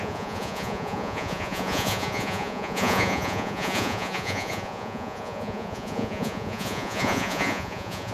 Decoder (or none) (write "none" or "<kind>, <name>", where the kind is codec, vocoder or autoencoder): vocoder, Vocos